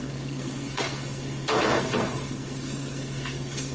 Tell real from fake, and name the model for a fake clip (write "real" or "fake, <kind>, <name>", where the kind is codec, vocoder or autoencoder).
fake, codec, SNAC